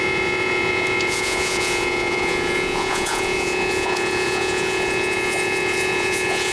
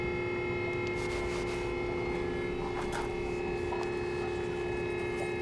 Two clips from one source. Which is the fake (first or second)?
first